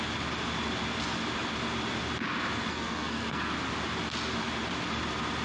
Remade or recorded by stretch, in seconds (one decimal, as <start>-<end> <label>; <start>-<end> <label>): 0.0-2.7 recorded; 2.7-3.5 remade; 3.5-5.4 recorded